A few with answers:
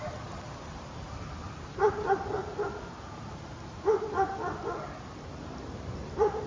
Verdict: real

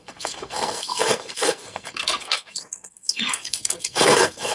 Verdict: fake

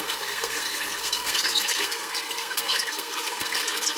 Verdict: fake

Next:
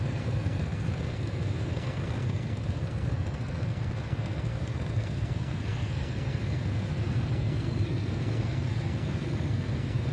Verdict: fake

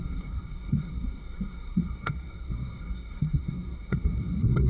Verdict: fake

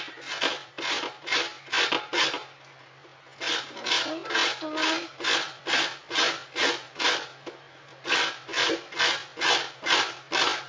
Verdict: real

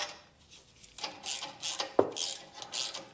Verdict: real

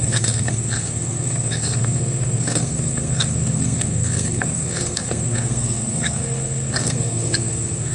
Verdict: fake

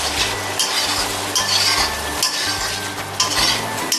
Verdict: real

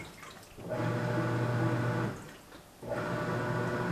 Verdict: real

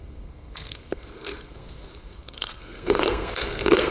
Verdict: fake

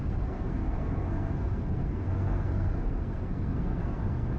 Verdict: fake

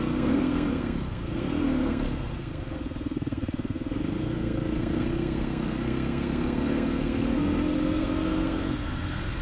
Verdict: fake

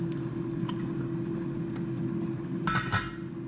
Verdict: real